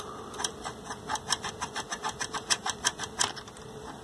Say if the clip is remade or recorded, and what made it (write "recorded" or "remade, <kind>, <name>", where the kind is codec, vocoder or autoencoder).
recorded